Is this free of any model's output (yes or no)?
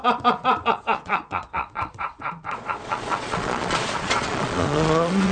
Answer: no